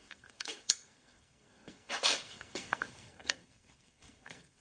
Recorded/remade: remade